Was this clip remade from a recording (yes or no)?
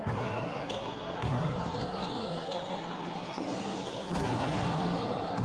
yes